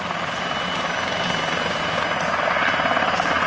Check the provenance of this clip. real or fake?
real